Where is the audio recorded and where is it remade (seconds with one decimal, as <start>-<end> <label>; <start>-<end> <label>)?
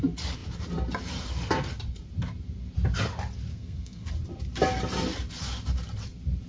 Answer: 0.0-3.5 recorded; 3.5-4.1 remade; 4.1-6.5 recorded